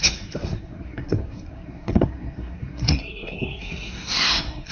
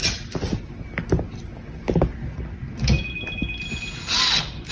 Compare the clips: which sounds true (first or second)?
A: second